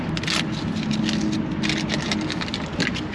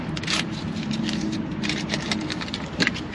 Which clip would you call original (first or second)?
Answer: first